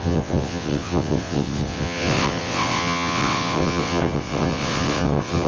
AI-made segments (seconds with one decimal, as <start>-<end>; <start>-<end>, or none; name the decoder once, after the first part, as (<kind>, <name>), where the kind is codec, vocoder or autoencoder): 0.0-5.5 (vocoder, WaveNeXt)